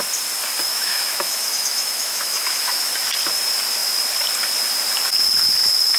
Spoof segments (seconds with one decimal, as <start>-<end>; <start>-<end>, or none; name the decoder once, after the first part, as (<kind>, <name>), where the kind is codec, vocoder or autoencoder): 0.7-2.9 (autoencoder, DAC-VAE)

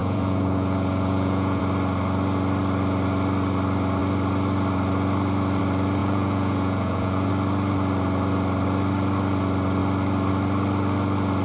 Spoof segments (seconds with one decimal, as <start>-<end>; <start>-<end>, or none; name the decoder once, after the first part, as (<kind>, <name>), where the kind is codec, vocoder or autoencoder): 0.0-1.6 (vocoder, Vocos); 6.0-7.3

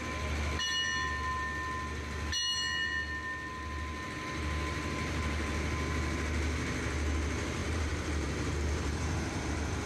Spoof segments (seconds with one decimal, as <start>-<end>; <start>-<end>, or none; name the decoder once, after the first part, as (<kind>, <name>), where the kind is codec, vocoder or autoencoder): 7.6-9.9 (vocoder, BigVGAN v2)